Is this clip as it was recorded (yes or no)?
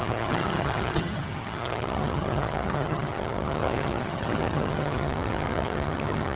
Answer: no